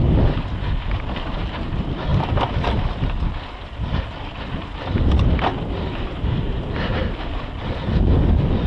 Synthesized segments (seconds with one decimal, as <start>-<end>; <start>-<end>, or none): 0.0-8.7